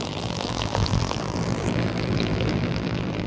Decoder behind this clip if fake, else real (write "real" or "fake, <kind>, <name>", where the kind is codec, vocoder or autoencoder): fake, vocoder, BigVGAN v2